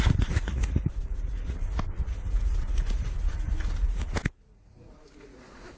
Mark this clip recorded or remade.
remade